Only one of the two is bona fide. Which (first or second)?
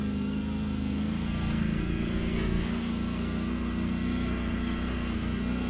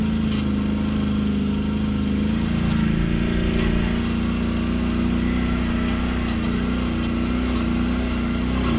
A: second